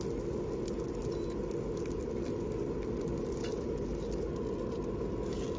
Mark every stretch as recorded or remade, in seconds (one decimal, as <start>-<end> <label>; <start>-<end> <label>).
0.0-5.6 recorded